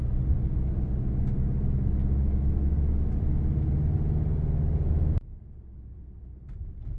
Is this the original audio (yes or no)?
yes